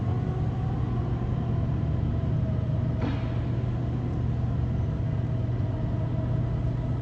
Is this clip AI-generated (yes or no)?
no